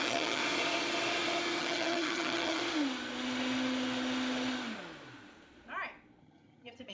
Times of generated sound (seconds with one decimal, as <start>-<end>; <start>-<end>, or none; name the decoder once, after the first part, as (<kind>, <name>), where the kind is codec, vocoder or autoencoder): 0.0-0.4 (vocoder, HiFi-GAN); 1.6-2.6; 6.2-6.9